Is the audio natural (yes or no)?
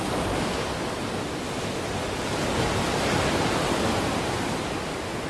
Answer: yes